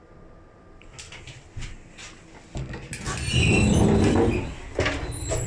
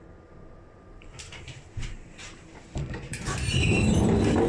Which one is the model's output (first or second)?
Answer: second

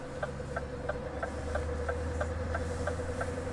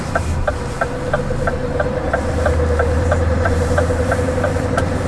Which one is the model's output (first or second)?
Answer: second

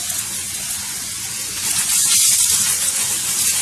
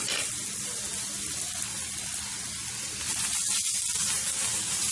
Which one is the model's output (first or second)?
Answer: first